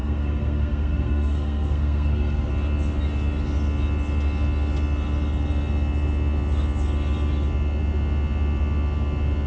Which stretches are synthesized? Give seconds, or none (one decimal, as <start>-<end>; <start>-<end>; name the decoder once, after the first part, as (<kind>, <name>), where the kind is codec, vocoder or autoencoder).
0.0-2.5 (codec, SNAC)